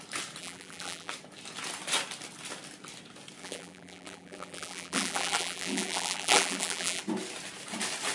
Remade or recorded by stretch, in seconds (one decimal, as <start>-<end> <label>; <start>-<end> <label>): 0.0-0.4 recorded; 0.4-1.1 remade; 1.1-3.4 recorded; 3.4-7.0 remade; 7.0-8.1 recorded